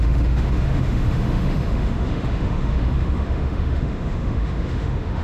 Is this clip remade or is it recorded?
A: remade